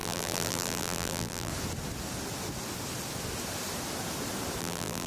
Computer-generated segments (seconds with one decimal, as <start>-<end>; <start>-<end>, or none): 0.0-1.5; 4.6-5.1

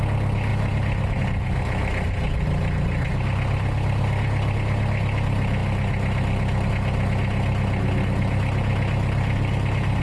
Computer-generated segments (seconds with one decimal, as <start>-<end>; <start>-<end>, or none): none

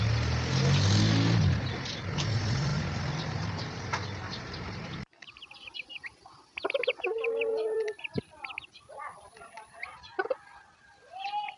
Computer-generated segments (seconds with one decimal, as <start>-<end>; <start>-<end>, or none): 2.7-5.5

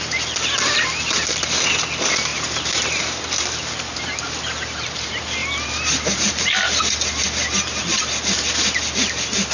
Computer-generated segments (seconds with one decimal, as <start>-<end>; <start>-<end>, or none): 5.4-6.8

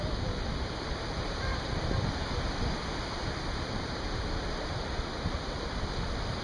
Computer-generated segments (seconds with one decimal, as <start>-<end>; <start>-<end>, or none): none

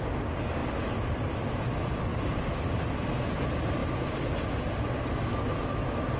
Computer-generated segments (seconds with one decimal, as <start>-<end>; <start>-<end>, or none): 0.6-1.3; 2.1-2.7